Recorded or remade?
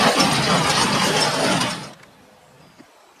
recorded